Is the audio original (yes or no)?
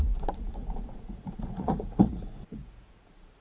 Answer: no